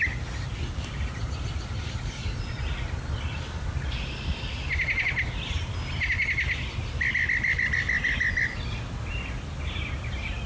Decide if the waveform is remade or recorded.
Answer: recorded